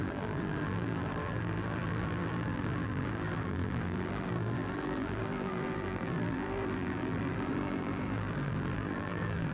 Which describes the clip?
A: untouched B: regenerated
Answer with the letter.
B